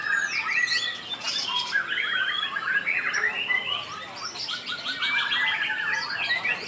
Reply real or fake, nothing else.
real